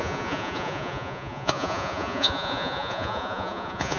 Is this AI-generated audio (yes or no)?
yes